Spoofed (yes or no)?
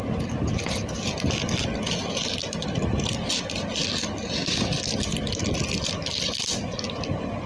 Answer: no